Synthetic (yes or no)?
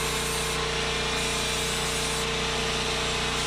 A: no